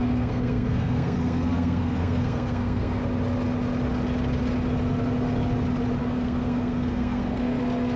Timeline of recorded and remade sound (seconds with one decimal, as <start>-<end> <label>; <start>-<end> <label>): 0.0-3.0 remade; 3.0-6.0 recorded; 6.0-7.6 remade; 7.6-8.0 recorded